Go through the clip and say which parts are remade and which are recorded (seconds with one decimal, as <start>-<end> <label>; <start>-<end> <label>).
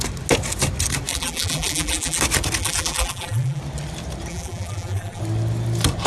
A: 0.0-1.1 recorded; 1.1-2.2 remade; 2.2-2.6 recorded; 2.6-3.6 remade; 3.6-4.3 recorded; 4.3-5.2 remade; 5.2-6.1 recorded